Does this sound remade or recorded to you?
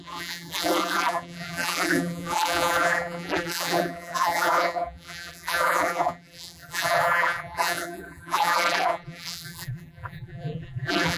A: remade